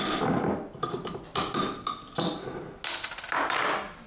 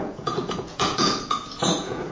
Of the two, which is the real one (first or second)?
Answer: first